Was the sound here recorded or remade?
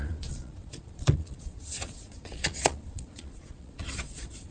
remade